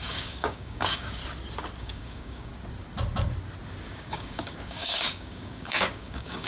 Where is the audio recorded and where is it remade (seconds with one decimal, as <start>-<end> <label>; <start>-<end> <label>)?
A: 0.0-1.2 remade; 1.2-1.8 recorded; 1.8-2.5 remade; 2.5-3.9 recorded; 3.9-6.5 remade